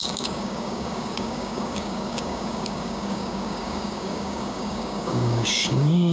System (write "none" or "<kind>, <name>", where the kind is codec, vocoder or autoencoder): codec, DAC